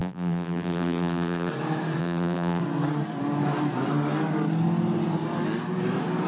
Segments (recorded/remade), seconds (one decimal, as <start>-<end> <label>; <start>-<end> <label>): 0.0-1.5 remade; 1.5-2.0 recorded; 2.0-2.6 remade; 2.6-6.3 recorded